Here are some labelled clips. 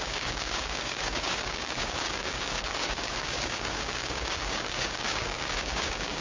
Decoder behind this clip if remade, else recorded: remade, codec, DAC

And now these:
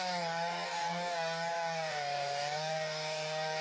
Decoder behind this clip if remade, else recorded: remade, codec, DAC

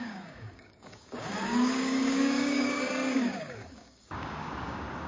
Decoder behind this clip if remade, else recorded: remade, codec, DAC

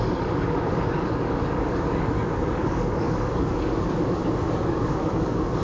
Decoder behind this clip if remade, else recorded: remade, codec, DAC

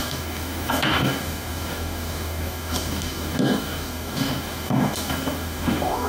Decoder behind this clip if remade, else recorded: remade, codec, DAC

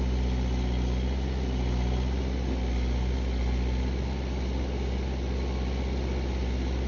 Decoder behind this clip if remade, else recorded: recorded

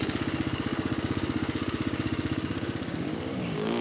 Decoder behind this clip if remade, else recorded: remade, codec, DAC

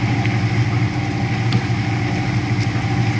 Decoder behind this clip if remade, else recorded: recorded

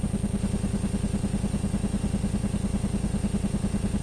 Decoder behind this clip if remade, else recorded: recorded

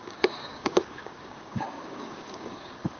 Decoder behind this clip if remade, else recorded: remade, codec, DAC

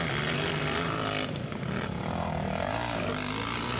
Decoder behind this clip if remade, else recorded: recorded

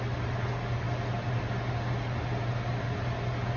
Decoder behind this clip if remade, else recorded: recorded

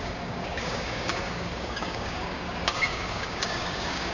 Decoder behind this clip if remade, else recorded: remade, codec, DAC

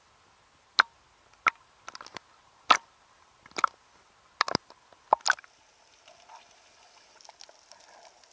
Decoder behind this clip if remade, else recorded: recorded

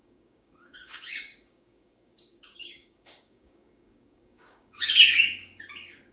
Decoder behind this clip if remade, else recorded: remade, codec, DAC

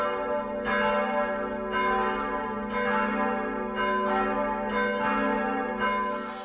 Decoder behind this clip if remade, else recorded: recorded